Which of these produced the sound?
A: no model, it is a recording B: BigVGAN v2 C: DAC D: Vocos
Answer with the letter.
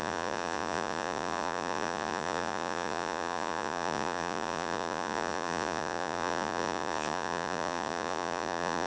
D